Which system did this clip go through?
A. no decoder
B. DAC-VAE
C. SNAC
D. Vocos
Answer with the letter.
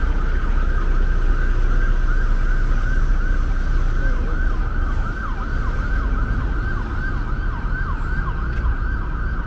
A